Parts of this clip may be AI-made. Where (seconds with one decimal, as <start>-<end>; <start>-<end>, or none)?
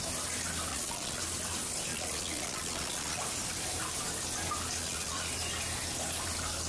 0.7-1.2; 1.9-3.2; 4.8-5.3